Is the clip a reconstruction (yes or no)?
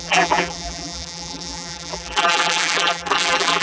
yes